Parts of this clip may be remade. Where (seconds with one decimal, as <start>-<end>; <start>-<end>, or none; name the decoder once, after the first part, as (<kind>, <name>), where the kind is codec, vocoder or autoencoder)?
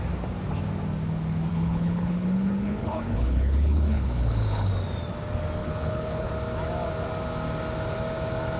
1.5-4.7 (codec, HILCodec); 5.6-6.3